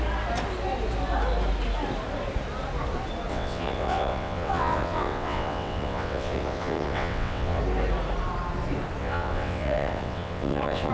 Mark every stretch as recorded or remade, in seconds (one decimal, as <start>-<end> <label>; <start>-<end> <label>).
0.0-3.3 recorded; 3.3-7.6 remade; 7.6-9.0 recorded; 9.0-10.9 remade